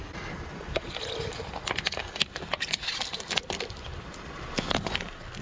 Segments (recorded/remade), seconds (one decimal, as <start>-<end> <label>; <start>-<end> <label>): 0.0-5.4 recorded